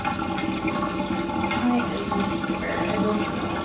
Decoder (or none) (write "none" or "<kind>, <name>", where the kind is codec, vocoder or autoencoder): none